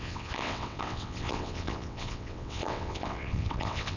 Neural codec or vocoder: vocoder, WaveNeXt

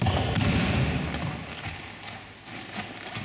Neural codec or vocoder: none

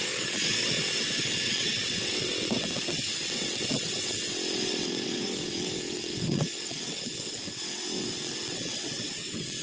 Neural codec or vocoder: vocoder, WaveNeXt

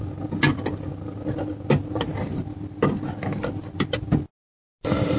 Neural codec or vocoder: none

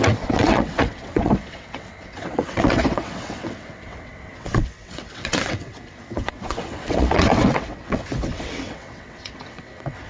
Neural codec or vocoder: vocoder, WaveNeXt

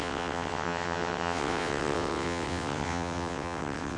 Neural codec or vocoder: vocoder, WaveNeXt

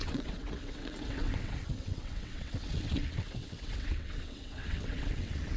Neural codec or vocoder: vocoder, WaveNeXt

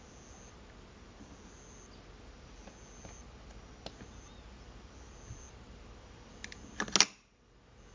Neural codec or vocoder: none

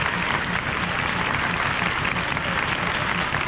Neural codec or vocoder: none